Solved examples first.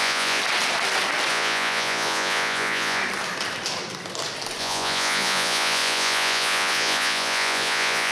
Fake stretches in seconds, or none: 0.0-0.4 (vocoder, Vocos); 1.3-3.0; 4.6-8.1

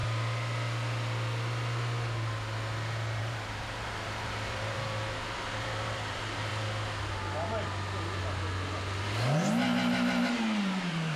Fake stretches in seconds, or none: 3.2-6.5 (vocoder, BigVGAN v2); 10.3-11.2

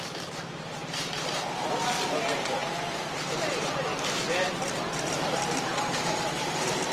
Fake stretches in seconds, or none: 0.0-2.6 (vocoder, BigVGAN v2); 3.2-3.9; 5.0-6.9

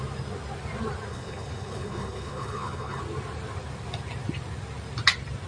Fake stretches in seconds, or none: 1.1-3.0 (codec, HILCodec)

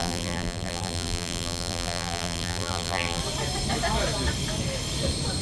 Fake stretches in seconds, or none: 0.0-3.2 (vocoder, BigVGAN v2)

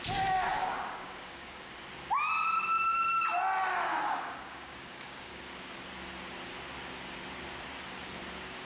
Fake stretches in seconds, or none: 0.5-1.7 (codec, DAC); 3.9-5.4